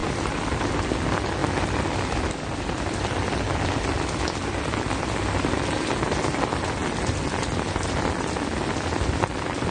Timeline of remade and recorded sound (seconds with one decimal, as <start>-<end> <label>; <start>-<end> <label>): 0.0-9.7 recorded